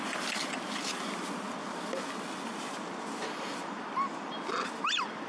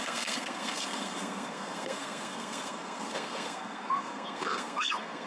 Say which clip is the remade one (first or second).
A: second